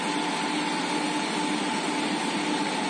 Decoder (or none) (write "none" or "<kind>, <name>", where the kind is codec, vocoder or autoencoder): none